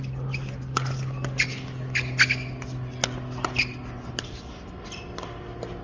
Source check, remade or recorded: recorded